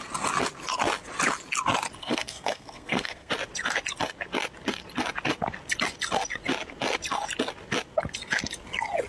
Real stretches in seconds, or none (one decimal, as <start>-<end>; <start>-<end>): 0.0-2.0; 3.3-9.1